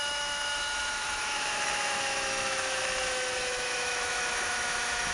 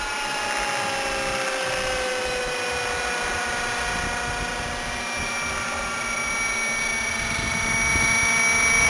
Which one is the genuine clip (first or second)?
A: second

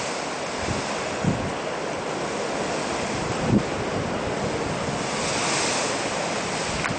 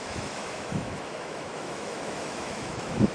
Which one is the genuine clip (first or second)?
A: first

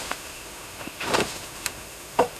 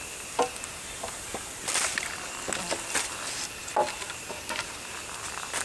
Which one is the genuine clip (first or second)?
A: second